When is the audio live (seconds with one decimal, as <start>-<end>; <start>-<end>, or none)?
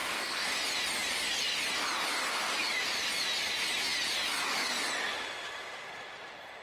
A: 0.5-6.6